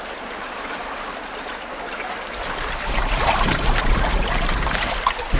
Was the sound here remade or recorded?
remade